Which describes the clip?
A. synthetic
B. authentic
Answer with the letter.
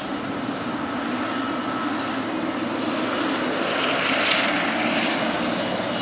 B